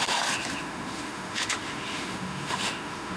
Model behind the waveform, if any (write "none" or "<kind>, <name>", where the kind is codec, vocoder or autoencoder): autoencoder, DAC-VAE